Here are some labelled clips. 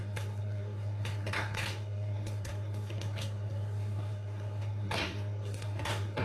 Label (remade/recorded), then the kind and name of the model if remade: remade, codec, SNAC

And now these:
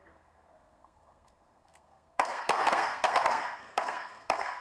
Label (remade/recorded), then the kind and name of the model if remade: remade, codec, SNAC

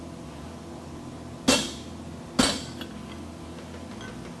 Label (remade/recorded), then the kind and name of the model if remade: recorded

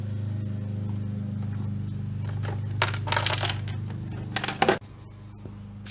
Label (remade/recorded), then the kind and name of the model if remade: recorded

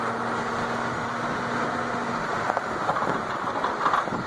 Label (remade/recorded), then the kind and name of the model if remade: recorded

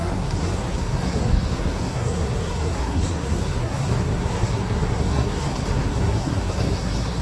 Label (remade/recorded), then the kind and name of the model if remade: remade, codec, SNAC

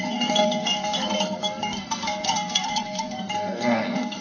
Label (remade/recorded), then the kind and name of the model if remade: remade, codec, SNAC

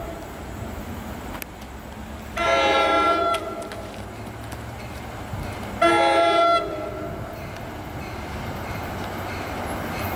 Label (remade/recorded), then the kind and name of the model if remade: recorded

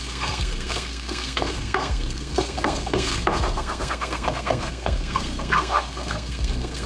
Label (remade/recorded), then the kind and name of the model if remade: remade, codec, SNAC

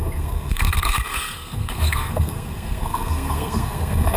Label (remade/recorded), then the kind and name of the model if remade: remade, codec, SNAC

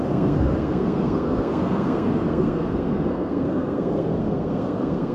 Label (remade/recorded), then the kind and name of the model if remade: remade, codec, SNAC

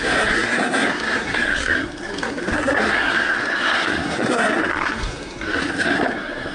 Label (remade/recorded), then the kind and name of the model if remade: remade, codec, SNAC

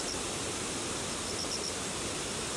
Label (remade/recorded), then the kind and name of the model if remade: recorded